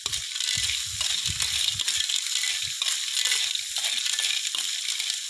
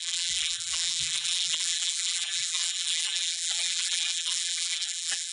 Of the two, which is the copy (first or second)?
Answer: second